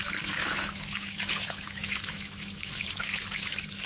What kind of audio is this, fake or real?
fake